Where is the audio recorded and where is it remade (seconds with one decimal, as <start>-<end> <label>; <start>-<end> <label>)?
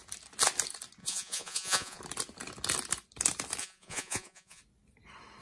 0.0-1.0 recorded; 1.0-2.0 remade; 2.0-3.6 recorded; 3.6-4.6 remade; 4.6-5.4 recorded